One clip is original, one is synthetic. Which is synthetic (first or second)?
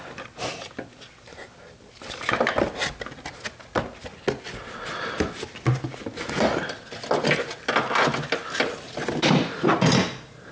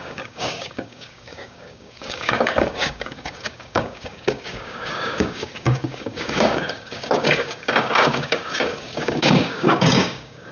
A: second